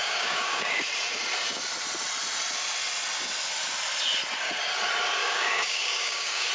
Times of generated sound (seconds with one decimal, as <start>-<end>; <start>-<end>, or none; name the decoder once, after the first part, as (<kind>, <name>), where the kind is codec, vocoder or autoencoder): 0.0-0.8 (codec, DAC); 5.2-6.5

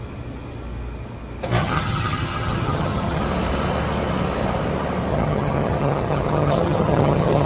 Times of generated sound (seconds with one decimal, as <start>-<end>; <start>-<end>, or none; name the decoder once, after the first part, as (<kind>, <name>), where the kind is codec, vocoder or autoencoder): 1.6-3.2 (vocoder, HiFi-GAN); 5.1-7.5

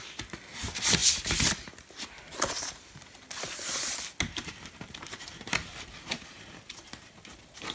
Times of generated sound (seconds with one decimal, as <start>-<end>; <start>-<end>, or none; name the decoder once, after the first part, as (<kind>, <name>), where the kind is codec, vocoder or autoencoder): none

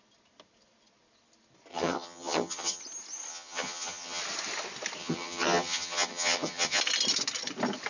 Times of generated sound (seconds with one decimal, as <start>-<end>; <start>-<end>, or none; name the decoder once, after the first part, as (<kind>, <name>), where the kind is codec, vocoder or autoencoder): 1.7-2.8 (vocoder, HiFi-GAN); 3.3-4.2; 5.0-6.8

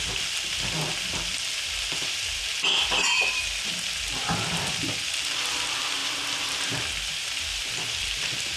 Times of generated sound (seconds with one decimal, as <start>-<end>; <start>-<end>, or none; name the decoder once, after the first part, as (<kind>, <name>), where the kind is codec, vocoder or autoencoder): 0.0-8.6 (vocoder, BigVGAN v2)

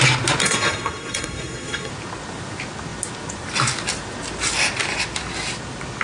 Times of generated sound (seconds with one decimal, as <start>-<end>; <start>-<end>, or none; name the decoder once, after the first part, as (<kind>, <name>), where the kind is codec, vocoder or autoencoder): 0.4-1.9 (codec, SNAC)

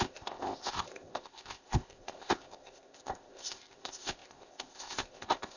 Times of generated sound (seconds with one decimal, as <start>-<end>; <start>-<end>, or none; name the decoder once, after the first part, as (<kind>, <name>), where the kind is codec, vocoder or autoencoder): 0.0-5.6 (codec, ZipCodec)